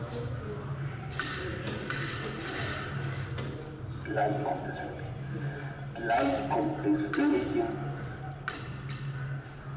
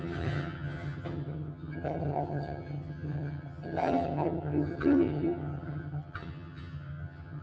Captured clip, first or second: first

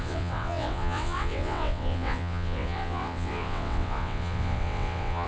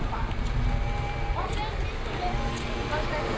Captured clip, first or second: second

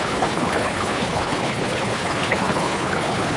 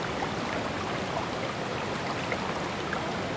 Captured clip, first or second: second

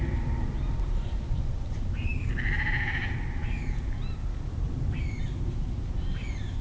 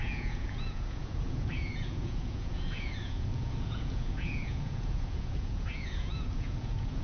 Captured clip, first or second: first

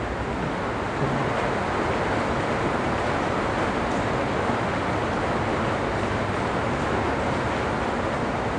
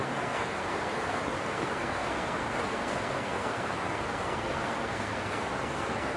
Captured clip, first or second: first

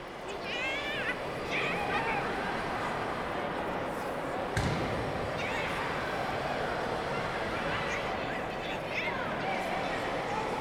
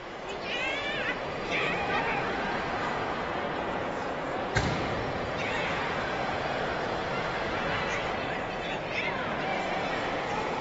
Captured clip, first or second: first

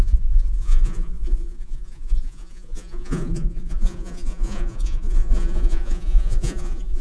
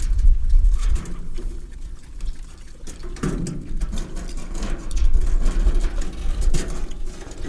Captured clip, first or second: second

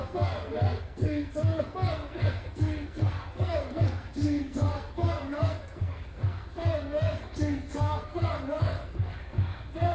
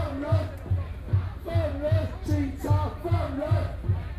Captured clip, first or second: second